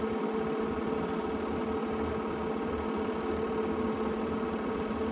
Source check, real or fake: real